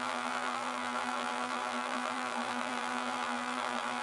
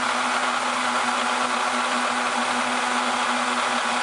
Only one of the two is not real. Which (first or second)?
first